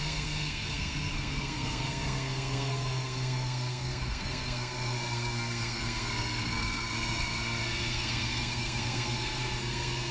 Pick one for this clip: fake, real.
fake